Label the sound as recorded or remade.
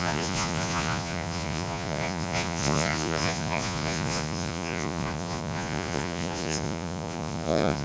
remade